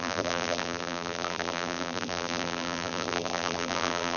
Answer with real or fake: fake